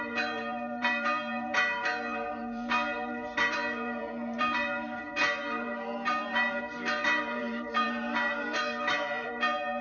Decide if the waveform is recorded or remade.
remade